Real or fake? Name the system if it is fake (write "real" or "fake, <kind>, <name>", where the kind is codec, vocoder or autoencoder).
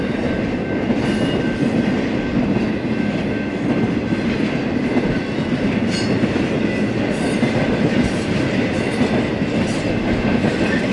real